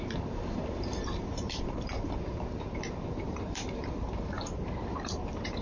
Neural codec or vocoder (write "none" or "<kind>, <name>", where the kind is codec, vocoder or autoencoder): vocoder, BigVGAN v2